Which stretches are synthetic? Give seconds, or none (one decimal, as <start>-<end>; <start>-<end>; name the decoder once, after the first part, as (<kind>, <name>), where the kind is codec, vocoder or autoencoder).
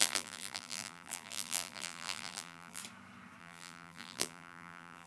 0.0-2.8 (vocoder, BigVGAN v2); 3.4-5.1